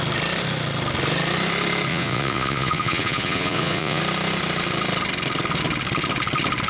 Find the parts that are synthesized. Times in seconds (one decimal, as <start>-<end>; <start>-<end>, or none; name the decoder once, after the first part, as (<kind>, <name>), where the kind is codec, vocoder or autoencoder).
1.9-4.0 (vocoder, Vocos)